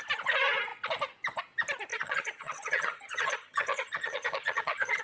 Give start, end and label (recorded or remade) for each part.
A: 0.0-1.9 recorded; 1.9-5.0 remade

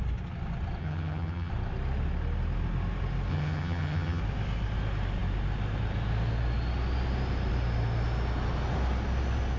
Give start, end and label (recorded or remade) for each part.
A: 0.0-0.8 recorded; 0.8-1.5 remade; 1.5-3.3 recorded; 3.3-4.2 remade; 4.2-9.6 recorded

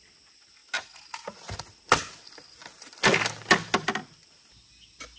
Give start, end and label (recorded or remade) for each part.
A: 0.0-5.2 recorded

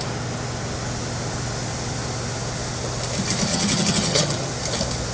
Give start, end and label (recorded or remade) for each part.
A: 0.0-3.5 recorded; 3.5-4.5 remade; 4.5-5.1 recorded

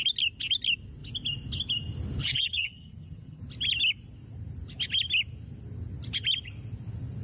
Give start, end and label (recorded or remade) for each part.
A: 0.0-2.2 recorded; 2.2-3.4 remade; 3.4-7.2 recorded